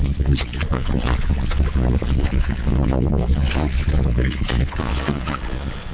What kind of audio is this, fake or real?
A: fake